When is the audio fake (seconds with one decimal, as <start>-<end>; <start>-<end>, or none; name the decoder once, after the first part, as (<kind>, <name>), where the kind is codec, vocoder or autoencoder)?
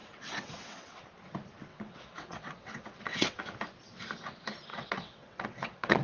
0.0-1.0 (vocoder, WaveNeXt); 1.7-3.4; 4.7-6.0